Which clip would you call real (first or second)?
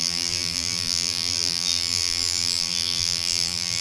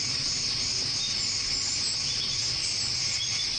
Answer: second